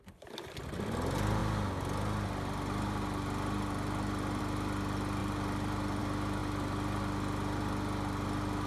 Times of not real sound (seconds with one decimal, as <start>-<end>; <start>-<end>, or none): none